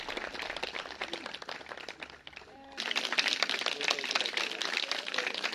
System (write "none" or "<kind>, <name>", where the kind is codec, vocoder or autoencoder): none